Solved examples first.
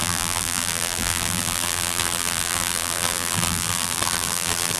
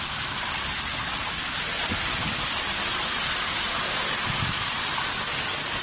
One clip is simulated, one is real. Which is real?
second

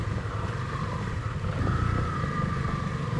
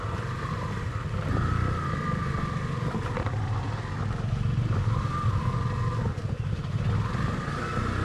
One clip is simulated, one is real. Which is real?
second